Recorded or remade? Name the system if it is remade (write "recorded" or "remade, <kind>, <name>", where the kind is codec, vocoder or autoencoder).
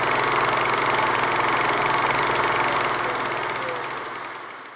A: recorded